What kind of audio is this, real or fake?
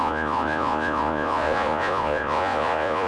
fake